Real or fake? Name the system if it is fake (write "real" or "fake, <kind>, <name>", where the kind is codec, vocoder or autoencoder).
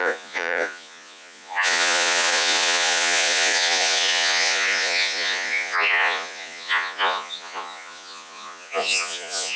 fake, vocoder, Vocos